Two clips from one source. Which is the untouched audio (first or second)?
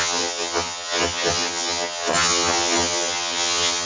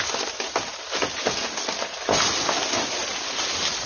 second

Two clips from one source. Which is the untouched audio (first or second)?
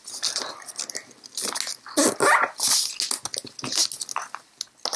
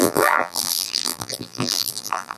first